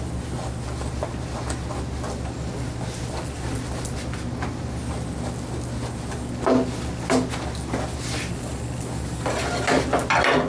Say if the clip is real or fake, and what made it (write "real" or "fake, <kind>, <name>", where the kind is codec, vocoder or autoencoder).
real